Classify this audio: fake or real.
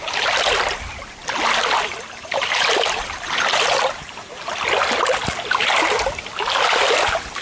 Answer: real